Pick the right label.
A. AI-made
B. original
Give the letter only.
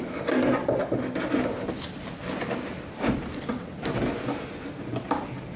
B